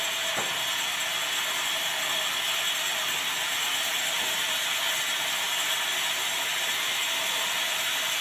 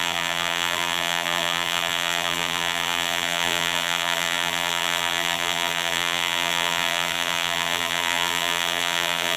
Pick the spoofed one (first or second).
second